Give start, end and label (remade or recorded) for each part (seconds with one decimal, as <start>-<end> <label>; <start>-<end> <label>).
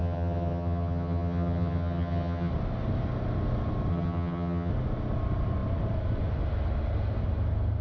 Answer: 0.0-2.5 remade; 2.5-3.9 recorded; 3.9-4.7 remade; 4.7-7.8 recorded